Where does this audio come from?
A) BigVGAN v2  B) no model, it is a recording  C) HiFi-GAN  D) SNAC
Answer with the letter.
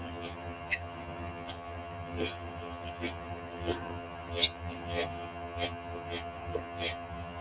C